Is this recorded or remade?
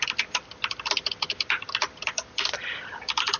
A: recorded